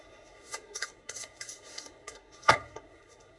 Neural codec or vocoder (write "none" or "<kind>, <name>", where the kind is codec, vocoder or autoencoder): codec, SNAC